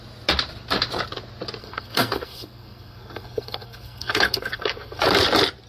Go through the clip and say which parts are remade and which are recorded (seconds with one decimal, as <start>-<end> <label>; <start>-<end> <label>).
0.0-1.6 recorded; 1.6-5.0 remade; 5.0-5.7 recorded